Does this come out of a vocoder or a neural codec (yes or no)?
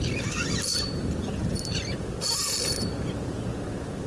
no